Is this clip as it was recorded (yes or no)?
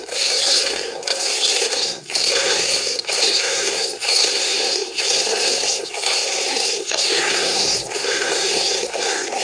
no